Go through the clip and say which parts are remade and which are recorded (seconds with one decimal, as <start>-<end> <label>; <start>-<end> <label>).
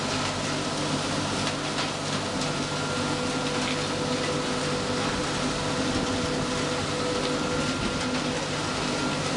0.0-9.4 recorded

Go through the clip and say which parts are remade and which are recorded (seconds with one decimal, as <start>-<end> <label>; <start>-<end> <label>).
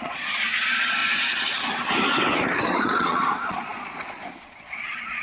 0.0-1.0 remade; 1.0-2.7 recorded; 2.7-5.2 remade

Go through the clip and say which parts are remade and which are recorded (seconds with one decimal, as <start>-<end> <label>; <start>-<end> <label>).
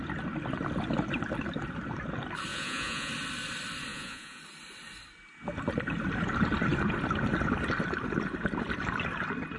0.0-2.5 recorded; 2.5-3.1 remade; 3.1-3.9 recorded; 3.9-4.4 remade; 4.4-9.6 recorded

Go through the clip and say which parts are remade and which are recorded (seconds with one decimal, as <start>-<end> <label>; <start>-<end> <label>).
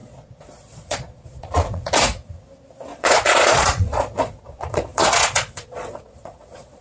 0.0-1.9 remade; 1.9-2.9 recorded; 2.9-6.8 remade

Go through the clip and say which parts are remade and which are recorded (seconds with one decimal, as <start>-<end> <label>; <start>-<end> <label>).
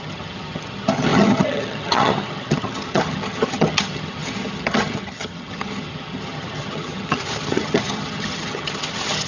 0.0-9.3 remade